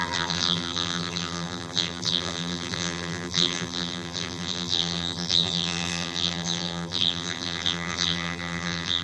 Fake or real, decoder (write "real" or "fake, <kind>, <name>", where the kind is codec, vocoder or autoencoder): fake, vocoder, BigVGAN v2